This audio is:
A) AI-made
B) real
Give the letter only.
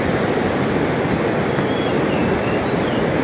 B